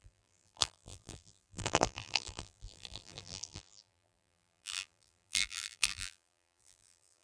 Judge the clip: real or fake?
fake